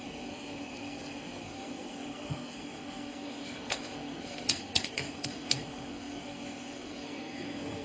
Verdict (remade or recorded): remade